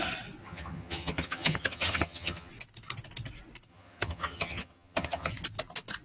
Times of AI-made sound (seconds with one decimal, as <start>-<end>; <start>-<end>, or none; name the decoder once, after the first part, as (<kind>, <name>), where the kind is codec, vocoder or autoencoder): 0.4-2.5 (vocoder, HiFi-GAN); 3.7-5.3